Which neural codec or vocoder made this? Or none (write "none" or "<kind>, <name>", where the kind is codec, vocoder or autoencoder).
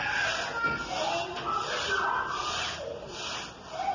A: none